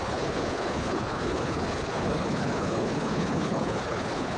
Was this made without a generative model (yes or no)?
no